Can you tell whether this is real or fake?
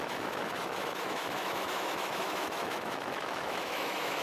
fake